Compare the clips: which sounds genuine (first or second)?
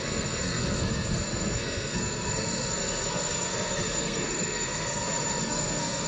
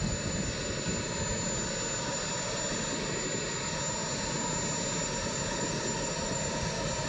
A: second